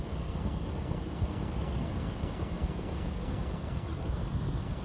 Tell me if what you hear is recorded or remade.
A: remade